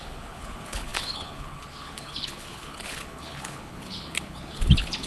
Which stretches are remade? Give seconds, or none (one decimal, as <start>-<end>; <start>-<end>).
0.0-5.1